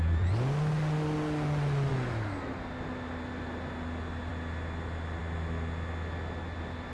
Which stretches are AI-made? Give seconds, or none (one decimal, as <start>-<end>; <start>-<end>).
none